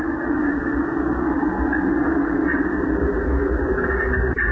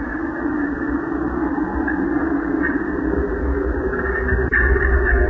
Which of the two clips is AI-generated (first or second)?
second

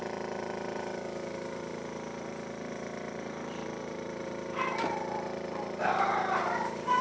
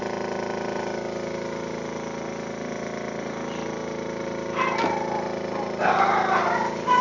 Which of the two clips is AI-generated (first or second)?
first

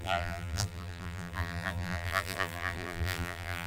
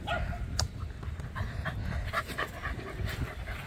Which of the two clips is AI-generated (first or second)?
first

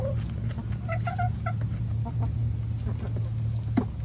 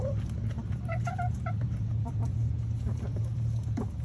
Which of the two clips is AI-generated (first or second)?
second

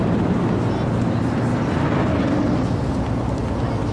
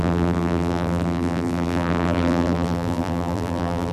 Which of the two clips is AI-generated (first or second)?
second